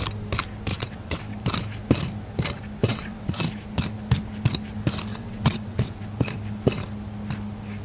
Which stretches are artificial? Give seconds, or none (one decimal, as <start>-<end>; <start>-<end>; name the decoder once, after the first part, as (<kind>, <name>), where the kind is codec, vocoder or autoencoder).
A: 0.7-1.2 (vocoder, WaveNeXt); 2.8-3.4; 5.1-6.0